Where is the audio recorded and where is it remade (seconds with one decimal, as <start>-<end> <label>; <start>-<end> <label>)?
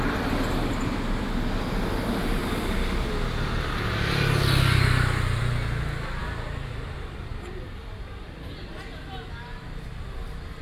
0.0-10.6 recorded